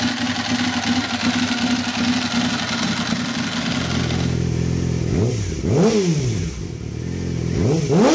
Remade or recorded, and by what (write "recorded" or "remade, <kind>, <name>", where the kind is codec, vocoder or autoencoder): recorded